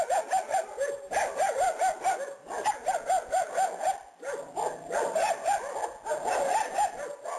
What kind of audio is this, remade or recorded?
recorded